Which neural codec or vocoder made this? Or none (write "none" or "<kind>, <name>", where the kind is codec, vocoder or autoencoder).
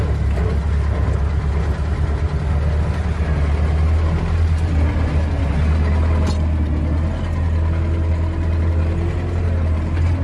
none